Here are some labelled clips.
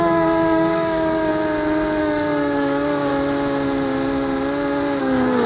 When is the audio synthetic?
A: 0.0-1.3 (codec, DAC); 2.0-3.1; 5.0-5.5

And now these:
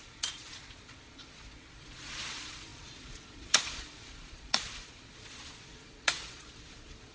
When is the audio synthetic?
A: 0.0-7.1 (vocoder, Vocos)

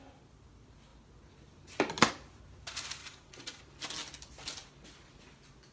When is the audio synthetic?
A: 3.0-3.6 (vocoder, Vocos)

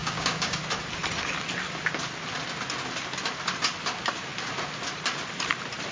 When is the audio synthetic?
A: 0.0-0.6 (codec, DAC)

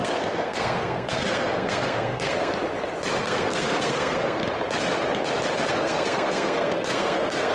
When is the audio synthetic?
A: 0.0-2.5 (codec, SNAC); 3.2-4.4; 5.7-7.5

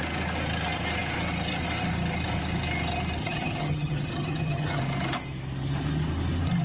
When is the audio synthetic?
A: 3.2-4.8 (vocoder, HiFi-GAN)

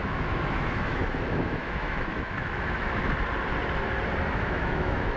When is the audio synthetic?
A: 0.0-3.1 (autoencoder, DAC-VAE); 4.3-5.2

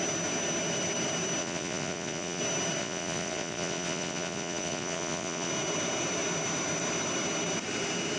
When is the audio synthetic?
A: 1.4-2.4 (vocoder, Vocos); 2.8-5.5